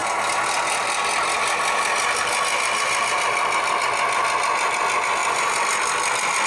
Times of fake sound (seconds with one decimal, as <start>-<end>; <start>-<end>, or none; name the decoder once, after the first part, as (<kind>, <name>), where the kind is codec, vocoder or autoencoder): 0.0-3.7 (vocoder, BigVGAN v2); 5.2-6.5